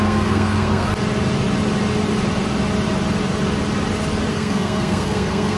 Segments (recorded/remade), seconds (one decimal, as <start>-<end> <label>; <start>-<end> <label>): 0.0-0.9 remade; 0.9-4.3 recorded; 4.3-5.6 remade